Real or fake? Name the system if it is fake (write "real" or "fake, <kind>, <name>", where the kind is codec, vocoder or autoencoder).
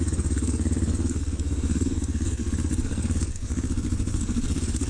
fake, codec, SNAC